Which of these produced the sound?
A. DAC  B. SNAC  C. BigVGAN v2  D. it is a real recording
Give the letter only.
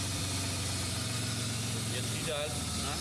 D